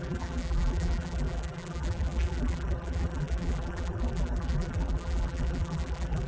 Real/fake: fake